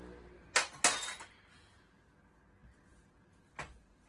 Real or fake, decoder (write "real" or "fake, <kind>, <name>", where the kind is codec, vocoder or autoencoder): real